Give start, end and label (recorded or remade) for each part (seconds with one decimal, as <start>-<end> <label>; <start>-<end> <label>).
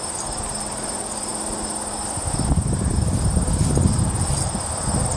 0.0-5.2 recorded